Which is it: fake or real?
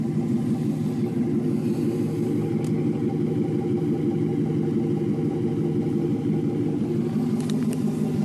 real